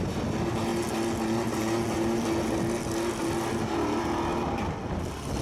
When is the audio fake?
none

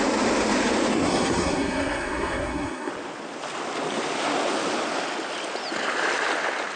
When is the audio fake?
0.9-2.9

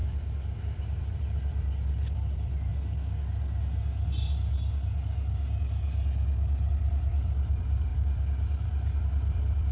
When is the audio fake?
0.0-2.7; 6.7-9.7

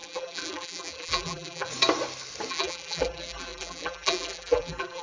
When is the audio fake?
0.0-1.7; 2.5-5.0

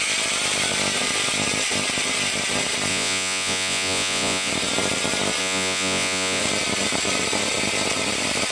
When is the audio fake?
2.9-4.5; 5.4-6.4

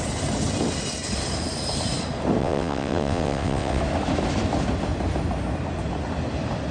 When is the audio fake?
2.4-3.8

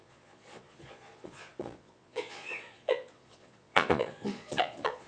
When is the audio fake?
0.0-5.1